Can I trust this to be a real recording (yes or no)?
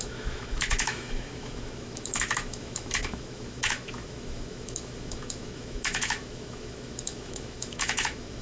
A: no